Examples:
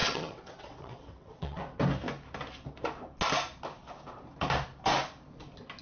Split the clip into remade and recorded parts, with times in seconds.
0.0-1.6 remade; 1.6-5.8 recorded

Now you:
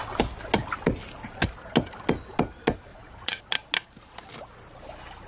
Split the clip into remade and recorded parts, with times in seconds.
0.0-2.9 recorded; 2.9-3.4 remade; 3.4-5.3 recorded

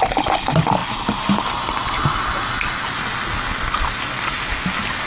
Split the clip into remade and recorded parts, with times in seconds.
0.0-5.1 recorded

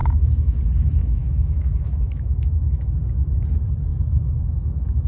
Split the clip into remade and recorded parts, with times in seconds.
0.0-0.6 remade; 0.6-1.0 recorded; 1.0-3.0 remade; 3.0-3.9 recorded; 3.9-5.1 remade

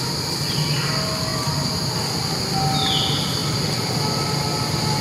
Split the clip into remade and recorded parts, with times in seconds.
0.0-5.0 recorded

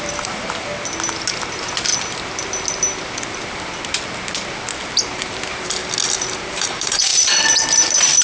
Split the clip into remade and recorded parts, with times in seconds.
0.0-0.7 remade; 0.7-1.4 recorded; 1.4-1.9 remade; 1.9-5.0 recorded; 5.0-5.8 remade; 5.8-6.4 recorded; 6.4-8.2 remade

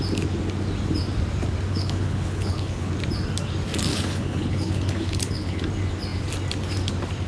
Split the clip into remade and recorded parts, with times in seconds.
0.0-1.7 recorded; 1.7-2.9 remade; 2.9-3.9 recorded; 3.9-5.6 remade; 5.6-7.3 recorded

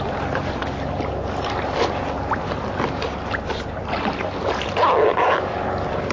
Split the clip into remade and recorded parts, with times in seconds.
0.0-6.1 recorded